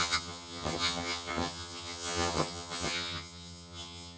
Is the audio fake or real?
fake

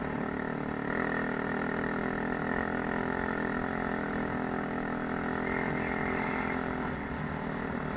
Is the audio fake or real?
real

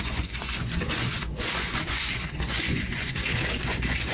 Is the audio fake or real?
fake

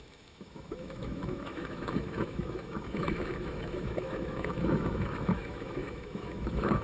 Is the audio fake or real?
fake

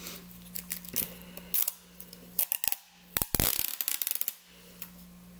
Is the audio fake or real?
real